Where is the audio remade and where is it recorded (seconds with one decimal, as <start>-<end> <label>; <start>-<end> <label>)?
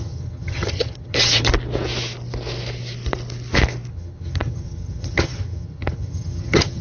0.0-1.5 remade; 1.5-3.9 recorded; 3.9-6.8 remade